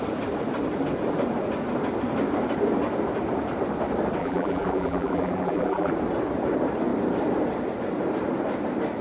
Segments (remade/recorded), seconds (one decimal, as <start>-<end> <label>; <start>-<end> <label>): 0.0-4.2 recorded; 4.2-5.9 remade; 5.9-9.0 recorded